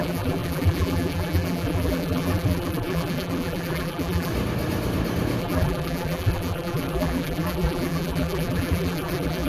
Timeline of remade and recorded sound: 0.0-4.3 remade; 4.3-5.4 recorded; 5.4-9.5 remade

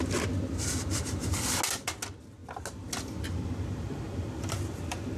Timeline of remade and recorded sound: 0.0-5.2 recorded

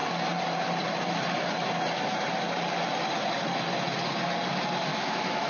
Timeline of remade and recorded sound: 0.0-4.9 recorded; 4.9-5.5 remade

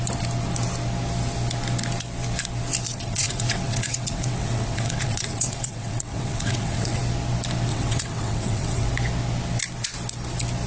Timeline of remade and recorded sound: 0.0-2.9 recorded; 2.9-7.0 remade; 7.0-7.7 recorded; 7.7-8.9 remade; 8.9-10.7 recorded

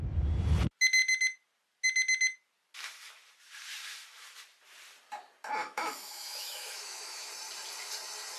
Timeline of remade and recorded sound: 0.0-5.6 recorded; 5.6-7.3 remade; 7.3-8.4 recorded

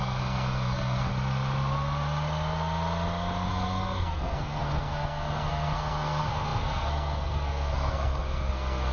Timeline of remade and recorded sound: 0.0-1.1 remade; 1.1-3.5 recorded; 3.5-8.9 remade

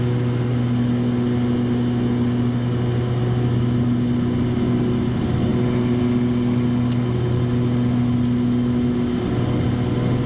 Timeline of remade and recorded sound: 0.0-10.3 recorded